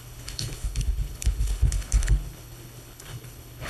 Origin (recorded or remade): remade